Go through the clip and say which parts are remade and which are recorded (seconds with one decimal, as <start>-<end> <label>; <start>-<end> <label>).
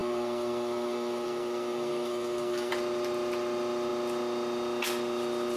0.0-2.7 remade; 2.7-5.6 recorded